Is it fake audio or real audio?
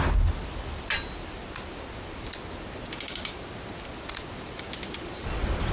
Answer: real